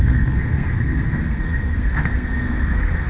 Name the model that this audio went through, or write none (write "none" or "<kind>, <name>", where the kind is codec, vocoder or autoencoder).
codec, SNAC